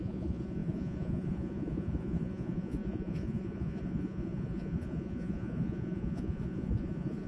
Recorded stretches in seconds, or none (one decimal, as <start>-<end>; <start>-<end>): none